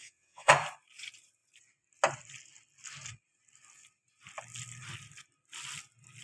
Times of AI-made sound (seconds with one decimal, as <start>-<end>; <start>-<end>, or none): 0.0-0.5